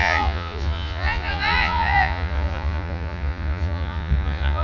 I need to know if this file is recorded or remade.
remade